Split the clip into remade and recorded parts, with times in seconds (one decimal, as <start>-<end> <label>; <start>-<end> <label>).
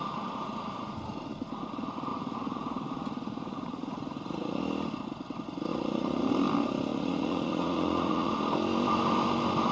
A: 0.0-2.1 recorded; 2.1-4.6 remade; 4.6-5.7 recorded; 5.7-6.2 remade; 6.2-6.9 recorded; 6.9-8.3 remade; 8.3-9.7 recorded